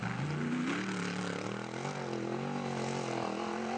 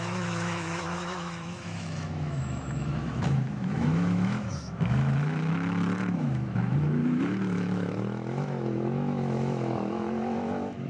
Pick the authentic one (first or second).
first